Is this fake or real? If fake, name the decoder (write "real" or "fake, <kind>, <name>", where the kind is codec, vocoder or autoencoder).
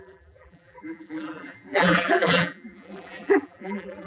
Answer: fake, vocoder, BigVGAN v2